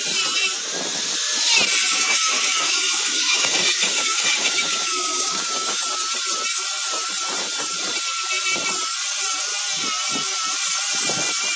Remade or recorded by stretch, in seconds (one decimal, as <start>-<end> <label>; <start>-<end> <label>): 0.0-1.8 recorded; 1.8-5.8 remade; 5.8-11.6 recorded